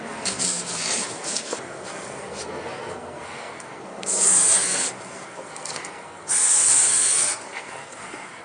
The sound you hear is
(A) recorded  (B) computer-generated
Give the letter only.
B